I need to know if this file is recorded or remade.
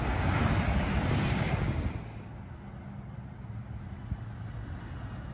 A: recorded